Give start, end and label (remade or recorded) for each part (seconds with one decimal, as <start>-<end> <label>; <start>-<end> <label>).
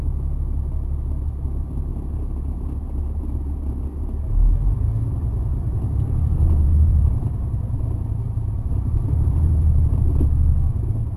0.0-1.9 recorded; 1.9-2.6 remade; 2.6-5.5 recorded; 5.5-10.0 remade; 10.0-11.2 recorded